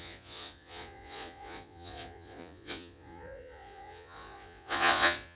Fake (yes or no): yes